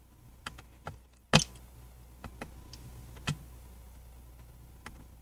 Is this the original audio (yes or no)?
yes